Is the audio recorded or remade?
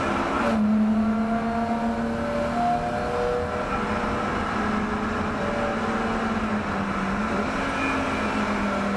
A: recorded